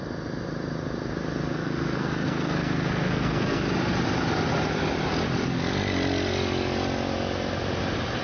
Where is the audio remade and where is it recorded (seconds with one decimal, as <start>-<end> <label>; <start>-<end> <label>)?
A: 0.0-1.5 recorded; 1.5-3.6 remade; 3.6-8.2 recorded